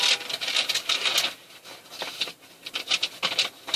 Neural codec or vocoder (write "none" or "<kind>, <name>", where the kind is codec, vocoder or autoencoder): none